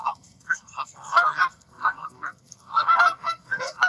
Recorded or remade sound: remade